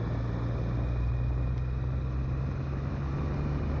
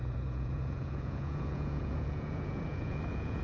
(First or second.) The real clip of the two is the first